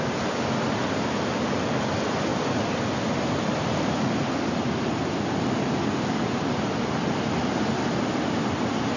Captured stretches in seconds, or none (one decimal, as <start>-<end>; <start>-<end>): 0.0-9.0